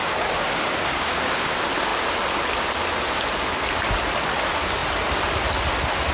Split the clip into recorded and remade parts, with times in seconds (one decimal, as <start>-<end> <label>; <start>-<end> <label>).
0.0-1.5 remade; 1.5-6.1 recorded